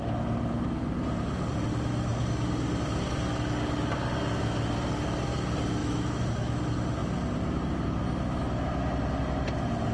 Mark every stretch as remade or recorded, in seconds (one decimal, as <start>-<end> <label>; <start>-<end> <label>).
0.0-5.8 recorded; 5.8-6.6 remade; 6.6-9.9 recorded